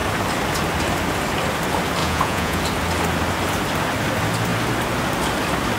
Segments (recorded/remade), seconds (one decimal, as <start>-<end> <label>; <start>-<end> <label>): 0.0-2.0 recorded; 2.0-2.6 remade; 2.6-5.8 recorded